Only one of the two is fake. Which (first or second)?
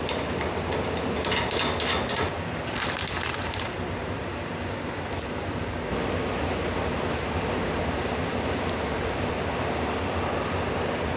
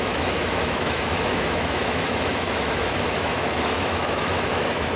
second